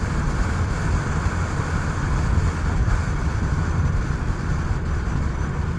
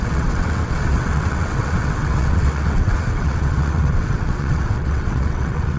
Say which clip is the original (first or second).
first